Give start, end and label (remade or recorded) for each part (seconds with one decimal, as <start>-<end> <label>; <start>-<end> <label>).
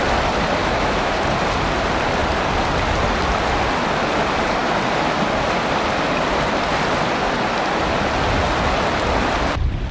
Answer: 0.0-0.6 recorded; 0.6-1.1 remade; 1.1-9.9 recorded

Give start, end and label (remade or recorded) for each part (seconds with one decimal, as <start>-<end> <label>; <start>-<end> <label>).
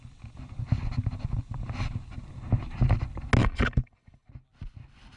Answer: 0.0-3.4 recorded; 3.4-4.3 remade; 4.3-5.2 recorded